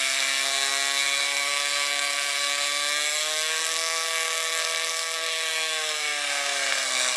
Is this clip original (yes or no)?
no